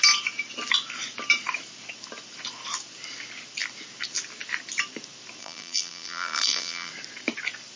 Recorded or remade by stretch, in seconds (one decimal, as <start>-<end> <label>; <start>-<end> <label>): 0.0-5.4 recorded; 5.4-6.9 remade; 6.9-7.8 recorded